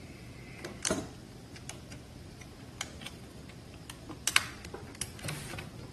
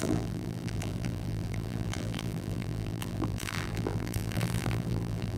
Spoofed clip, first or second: second